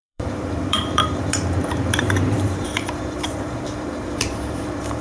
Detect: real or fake fake